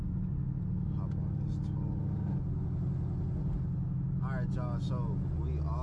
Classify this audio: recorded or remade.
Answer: recorded